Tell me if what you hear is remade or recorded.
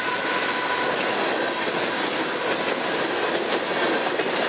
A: recorded